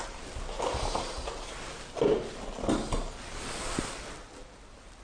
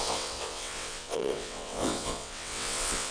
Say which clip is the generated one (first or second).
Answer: second